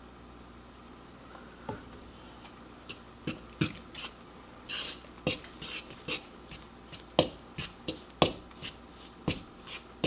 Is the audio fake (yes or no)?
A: no